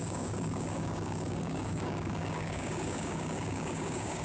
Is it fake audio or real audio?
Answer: fake